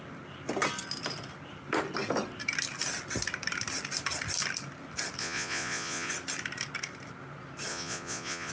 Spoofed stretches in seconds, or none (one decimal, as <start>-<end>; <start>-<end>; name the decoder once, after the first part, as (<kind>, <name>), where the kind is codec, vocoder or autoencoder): 5.2-6.1 (vocoder, Vocos); 7.7-8.5